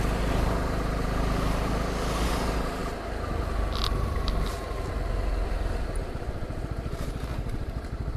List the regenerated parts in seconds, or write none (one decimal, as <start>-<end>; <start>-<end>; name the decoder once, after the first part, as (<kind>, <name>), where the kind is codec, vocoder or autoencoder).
6.0-8.2 (vocoder, BigVGAN v2)